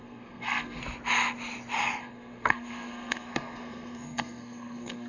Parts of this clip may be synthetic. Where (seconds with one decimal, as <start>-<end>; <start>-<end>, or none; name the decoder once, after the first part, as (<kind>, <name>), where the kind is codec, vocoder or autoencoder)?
0.0-0.8 (codec, SNAC); 2.0-5.1